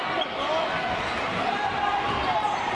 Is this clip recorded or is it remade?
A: recorded